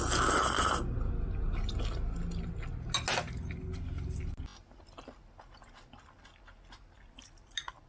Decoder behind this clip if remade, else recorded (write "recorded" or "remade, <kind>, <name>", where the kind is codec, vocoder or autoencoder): recorded